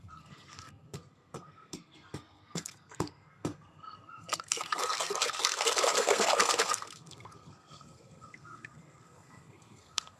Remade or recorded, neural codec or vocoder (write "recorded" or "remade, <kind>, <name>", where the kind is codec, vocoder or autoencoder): remade, codec, SNAC